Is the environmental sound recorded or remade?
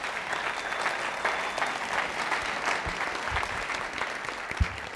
recorded